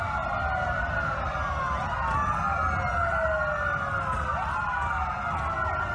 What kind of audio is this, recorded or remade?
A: recorded